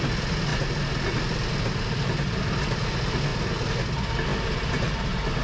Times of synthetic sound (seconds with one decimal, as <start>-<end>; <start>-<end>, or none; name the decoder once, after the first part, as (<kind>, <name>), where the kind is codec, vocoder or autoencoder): none

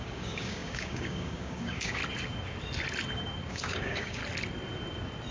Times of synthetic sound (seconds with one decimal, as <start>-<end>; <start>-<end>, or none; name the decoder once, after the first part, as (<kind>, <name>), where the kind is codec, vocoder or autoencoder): 0.0-2.0 (codec, DAC); 3.5-4.2

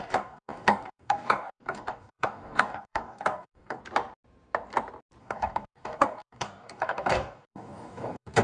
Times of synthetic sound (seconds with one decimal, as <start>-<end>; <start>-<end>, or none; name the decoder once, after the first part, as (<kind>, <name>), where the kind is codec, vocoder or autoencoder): 0.0-3.8 (codec, DAC); 5.2-8.4

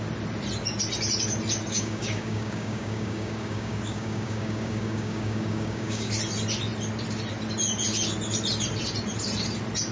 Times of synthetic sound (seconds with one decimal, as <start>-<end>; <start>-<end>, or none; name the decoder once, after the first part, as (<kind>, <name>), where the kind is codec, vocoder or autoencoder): 1.7-6.1 (codec, DAC)

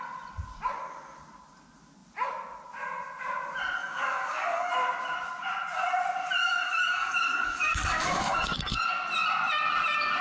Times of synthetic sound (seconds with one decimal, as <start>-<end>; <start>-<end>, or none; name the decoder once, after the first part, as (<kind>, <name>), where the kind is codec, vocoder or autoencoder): 3.8-4.7 (codec, DAC); 6.4-8.6

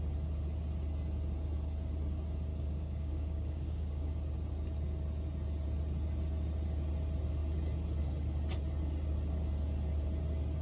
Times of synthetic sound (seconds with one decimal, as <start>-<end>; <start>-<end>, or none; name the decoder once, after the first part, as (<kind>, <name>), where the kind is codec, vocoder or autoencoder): 2.5-4.1 (codec, DAC)